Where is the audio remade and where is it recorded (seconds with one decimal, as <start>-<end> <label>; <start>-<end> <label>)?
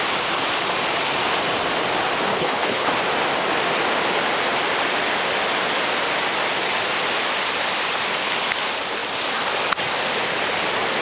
0.0-2.3 recorded; 2.3-2.9 remade; 2.9-11.0 recorded